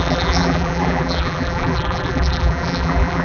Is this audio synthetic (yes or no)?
yes